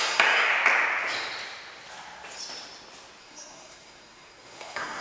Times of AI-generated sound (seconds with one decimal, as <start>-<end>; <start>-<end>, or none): 0.0-0.5; 3.2-5.0